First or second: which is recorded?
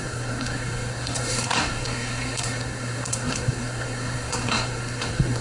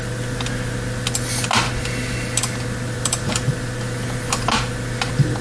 second